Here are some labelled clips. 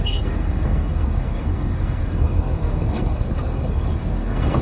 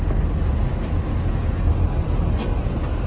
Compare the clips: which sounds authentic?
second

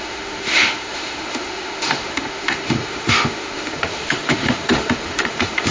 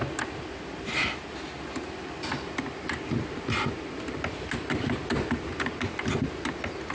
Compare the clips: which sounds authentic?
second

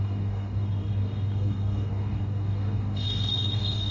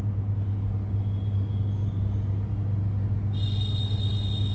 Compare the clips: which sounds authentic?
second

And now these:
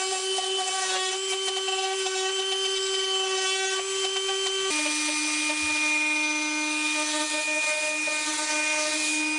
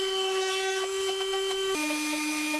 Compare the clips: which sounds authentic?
first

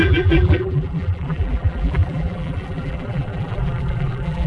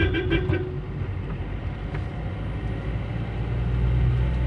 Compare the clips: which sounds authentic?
second